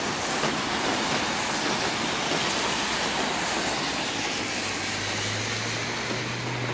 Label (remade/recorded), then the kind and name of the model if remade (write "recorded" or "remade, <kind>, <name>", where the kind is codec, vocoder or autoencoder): recorded